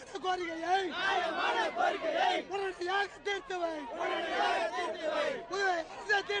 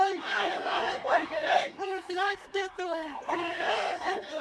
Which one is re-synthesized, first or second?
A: second